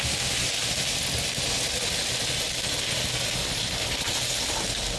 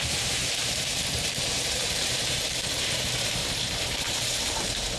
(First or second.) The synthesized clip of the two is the second